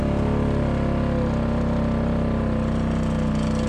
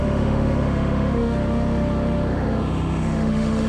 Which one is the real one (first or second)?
first